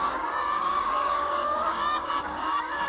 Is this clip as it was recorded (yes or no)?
no